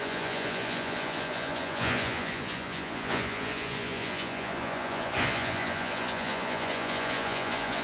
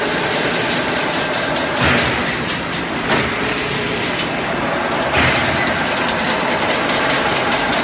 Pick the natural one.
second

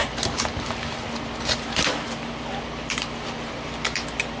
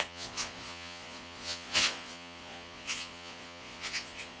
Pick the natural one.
first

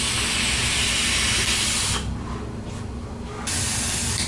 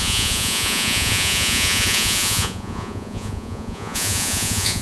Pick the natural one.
first